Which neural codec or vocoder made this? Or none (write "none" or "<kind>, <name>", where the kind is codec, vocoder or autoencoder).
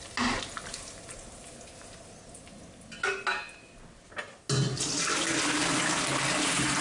none